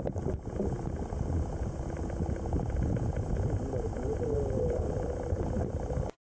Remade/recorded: recorded